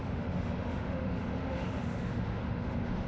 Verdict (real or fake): fake